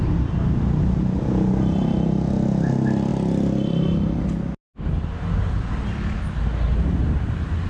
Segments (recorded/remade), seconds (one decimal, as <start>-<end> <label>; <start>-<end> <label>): 0.0-7.7 recorded